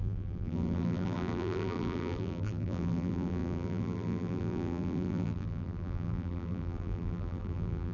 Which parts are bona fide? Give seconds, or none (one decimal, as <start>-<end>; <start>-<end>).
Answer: none